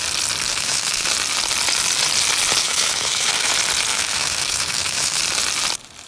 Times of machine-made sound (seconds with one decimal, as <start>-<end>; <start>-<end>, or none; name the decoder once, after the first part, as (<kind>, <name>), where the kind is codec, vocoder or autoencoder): 0.5-1.1 (autoencoder, DAC-VAE); 2.6-3.5; 3.9-5.2

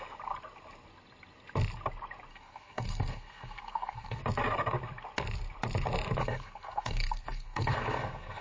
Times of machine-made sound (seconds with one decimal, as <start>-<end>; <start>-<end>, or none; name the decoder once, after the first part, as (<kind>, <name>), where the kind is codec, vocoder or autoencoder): 2.3-4.2 (codec, SNAC); 6.2-8.4

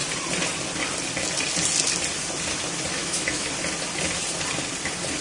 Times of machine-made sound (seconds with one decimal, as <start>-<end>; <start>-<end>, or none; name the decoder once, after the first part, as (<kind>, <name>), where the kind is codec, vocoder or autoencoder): 3.0-3.5 (autoencoder, DAC-VAE)

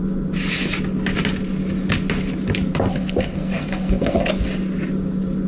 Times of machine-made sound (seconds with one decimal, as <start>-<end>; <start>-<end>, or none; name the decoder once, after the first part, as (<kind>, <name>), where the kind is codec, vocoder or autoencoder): 2.9-4.3 (codec, SNAC)

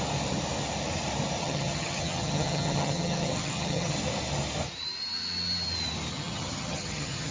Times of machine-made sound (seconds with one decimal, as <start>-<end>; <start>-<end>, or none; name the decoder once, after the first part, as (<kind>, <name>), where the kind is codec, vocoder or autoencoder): 1.4-4.0 (vocoder, HiFi-GAN); 6.1-7.3

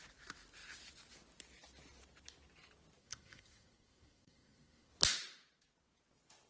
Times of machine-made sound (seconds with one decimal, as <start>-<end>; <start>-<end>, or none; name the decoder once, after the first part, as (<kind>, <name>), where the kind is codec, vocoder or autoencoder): 3.0-4.9 (codec, SNAC)

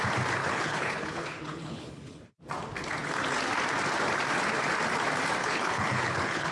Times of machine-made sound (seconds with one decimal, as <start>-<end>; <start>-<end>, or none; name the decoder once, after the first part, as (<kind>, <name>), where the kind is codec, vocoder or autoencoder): 0.4-2.3 (codec, HILCodec); 5.4-6.5